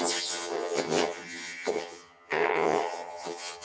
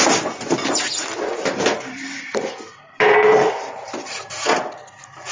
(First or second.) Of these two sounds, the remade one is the first